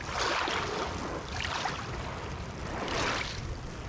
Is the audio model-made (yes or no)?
no